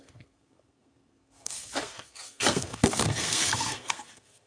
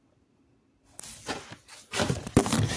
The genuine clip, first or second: second